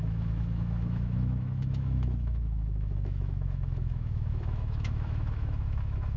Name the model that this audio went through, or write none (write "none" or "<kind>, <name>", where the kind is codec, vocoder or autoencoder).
autoencoder, DAC-VAE